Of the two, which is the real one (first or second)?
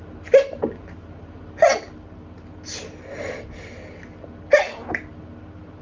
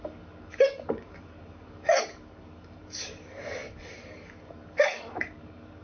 first